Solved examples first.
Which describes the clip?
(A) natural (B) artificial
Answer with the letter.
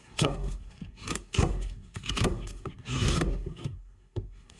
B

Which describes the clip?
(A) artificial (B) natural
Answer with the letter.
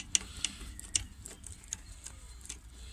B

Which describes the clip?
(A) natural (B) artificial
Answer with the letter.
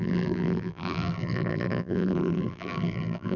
B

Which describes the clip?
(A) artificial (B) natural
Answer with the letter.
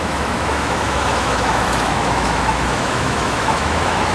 A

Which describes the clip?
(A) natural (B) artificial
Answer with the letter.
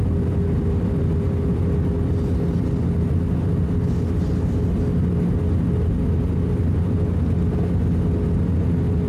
A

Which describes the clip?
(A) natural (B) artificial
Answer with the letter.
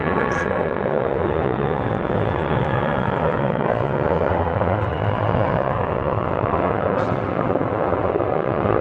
B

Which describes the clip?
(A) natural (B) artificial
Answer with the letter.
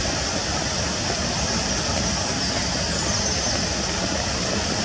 A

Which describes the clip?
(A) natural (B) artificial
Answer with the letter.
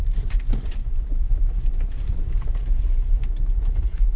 B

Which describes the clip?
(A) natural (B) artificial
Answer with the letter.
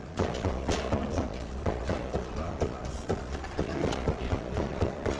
B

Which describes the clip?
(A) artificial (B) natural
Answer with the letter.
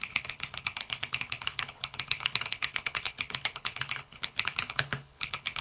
A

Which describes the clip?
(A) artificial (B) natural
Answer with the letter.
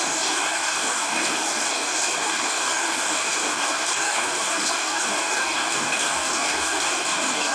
A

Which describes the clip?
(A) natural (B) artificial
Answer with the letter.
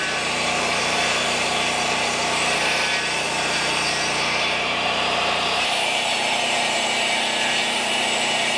B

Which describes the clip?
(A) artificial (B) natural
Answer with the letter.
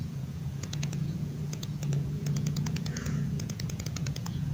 A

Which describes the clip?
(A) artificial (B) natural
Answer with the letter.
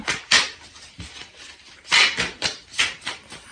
A